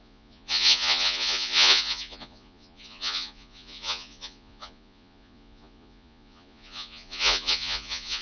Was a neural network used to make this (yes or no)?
yes